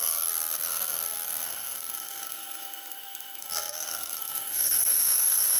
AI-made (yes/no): yes